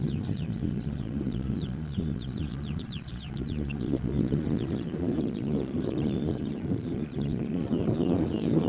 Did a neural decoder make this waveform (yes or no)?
yes